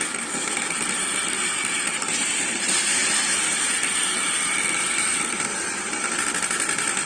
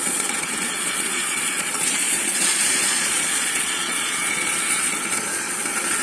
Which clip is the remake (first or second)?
second